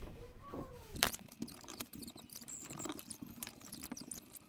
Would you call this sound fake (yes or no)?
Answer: yes